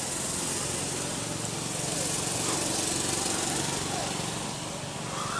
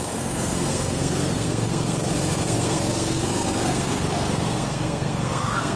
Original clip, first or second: first